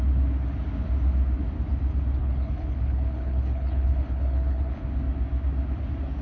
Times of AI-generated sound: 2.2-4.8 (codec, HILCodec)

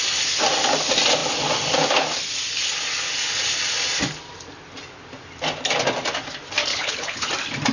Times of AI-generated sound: 6.7-7.3 (codec, HILCodec)

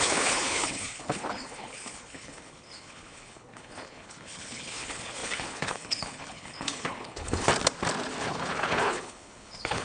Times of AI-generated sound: 0.0-7.5 (codec, HILCodec); 8.2-9.8